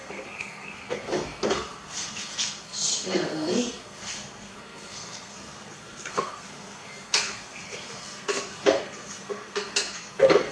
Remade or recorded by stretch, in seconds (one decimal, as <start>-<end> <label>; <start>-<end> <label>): 0.0-10.5 remade